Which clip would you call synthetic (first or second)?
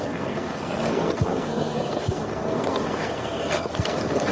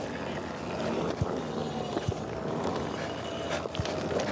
first